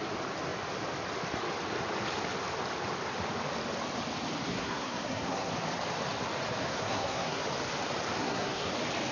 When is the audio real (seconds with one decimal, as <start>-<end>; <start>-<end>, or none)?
0.0-4.5; 5.5-6.7; 7.4-8.2; 8.7-9.1